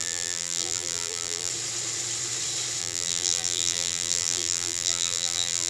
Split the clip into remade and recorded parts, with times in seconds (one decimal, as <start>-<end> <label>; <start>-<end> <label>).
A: 0.0-1.5 remade; 1.5-2.8 recorded; 2.8-5.7 remade